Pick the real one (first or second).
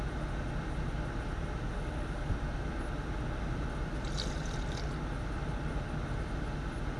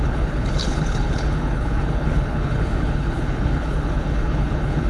first